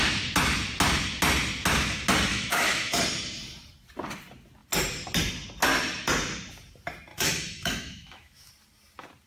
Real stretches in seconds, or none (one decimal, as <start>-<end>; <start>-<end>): 0.0-2.3; 3.0-7.1; 8.5-9.3